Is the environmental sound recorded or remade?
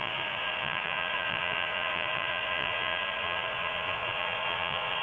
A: remade